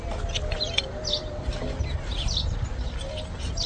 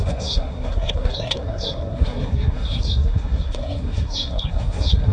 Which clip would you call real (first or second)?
first